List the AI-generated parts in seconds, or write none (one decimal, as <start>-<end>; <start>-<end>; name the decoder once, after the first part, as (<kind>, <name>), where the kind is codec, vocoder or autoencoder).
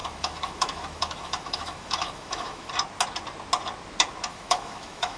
0.0-2.7 (autoencoder, DAC-VAE); 4.3-5.2